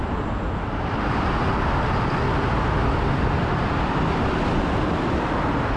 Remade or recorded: remade